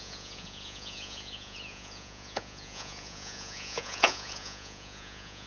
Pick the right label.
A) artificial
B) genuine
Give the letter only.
A